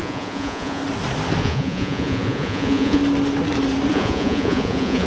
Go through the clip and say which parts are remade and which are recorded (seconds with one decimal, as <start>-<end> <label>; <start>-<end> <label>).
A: 0.0-0.8 remade; 0.8-1.4 recorded; 1.4-3.0 remade; 3.0-3.9 recorded; 3.9-5.1 remade